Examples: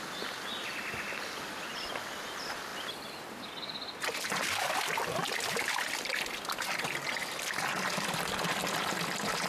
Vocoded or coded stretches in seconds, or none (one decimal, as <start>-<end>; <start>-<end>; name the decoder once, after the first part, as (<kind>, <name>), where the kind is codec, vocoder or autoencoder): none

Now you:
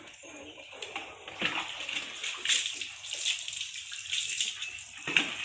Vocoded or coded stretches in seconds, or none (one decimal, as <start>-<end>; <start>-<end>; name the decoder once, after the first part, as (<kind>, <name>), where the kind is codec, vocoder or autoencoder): none

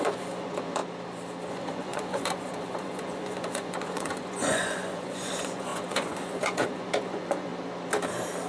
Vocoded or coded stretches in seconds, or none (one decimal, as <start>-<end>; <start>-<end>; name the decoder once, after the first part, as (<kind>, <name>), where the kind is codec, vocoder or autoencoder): 0.0-0.8 (vocoder, Vocos); 1.5-7.5

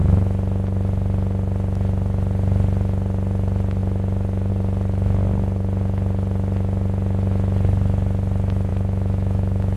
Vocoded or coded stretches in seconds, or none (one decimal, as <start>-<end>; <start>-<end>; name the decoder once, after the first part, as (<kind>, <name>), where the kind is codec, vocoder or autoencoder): 8.7-9.8 (autoencoder, DAC-VAE)

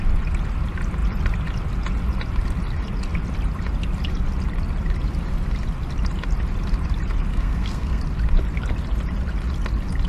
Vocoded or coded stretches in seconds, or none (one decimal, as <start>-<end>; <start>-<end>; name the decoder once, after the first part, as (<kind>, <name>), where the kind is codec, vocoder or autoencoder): 7.3-8.0 (codec, SNAC)